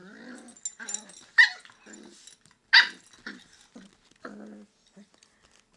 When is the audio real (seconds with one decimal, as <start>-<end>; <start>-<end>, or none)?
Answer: 0.0-5.8

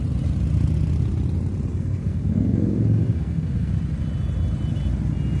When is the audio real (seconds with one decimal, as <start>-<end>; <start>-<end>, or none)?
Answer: 0.0-1.7; 3.7-5.4

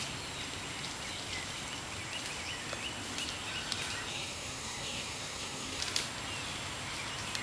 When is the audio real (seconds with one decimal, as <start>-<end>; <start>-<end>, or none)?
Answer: 0.0-4.1; 5.8-7.4

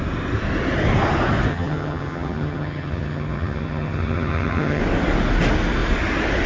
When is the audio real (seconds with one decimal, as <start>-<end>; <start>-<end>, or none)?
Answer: 0.0-1.5; 4.8-6.5

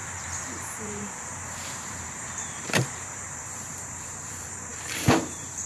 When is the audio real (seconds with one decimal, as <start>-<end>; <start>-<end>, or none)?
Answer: none

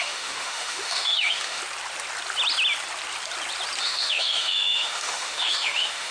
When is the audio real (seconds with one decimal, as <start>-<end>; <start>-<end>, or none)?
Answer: 1.6-3.8

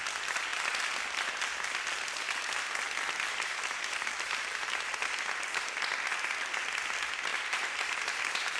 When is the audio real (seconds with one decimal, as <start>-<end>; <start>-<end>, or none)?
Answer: 0.0-3.3; 4.9-7.3